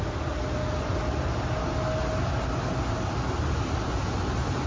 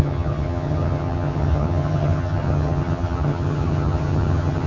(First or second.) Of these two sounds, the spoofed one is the second